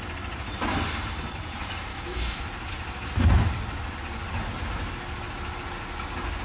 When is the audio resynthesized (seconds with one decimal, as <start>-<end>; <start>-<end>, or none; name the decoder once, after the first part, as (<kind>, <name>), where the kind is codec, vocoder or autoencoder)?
1.9-2.7 (autoencoder, DAC-VAE)